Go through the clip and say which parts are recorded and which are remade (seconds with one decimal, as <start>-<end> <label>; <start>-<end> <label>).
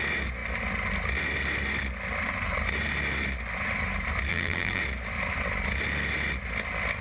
0.0-4.3 recorded; 4.3-4.8 remade; 4.8-7.0 recorded